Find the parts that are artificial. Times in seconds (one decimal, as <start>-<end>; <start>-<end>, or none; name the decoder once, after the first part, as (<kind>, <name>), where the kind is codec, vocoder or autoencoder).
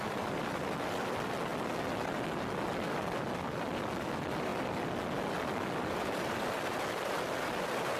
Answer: 0.0-1.5 (vocoder, BigVGAN v2); 4.1-4.5; 5.8-8.0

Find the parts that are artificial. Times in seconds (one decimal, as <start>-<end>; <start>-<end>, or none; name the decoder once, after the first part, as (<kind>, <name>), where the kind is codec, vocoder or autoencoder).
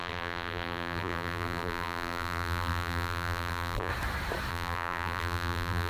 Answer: 0.0-3.9 (vocoder, BigVGAN v2); 4.5-5.9